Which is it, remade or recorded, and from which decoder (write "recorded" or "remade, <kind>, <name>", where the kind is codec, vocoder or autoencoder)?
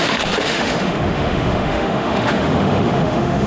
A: remade, autoencoder, DAC-VAE